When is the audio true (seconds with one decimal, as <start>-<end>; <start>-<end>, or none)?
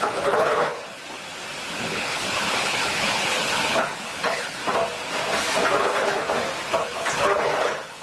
1.0-1.8; 4.6-5.8; 6.2-6.8